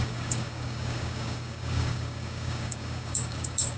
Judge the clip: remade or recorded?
remade